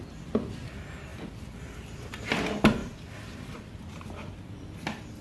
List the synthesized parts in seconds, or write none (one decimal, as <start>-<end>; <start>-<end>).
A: none